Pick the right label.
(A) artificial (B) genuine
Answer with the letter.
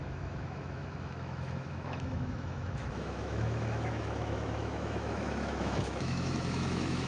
A